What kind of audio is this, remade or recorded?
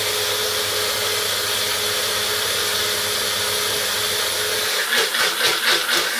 recorded